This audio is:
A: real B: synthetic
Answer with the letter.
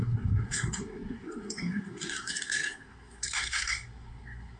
B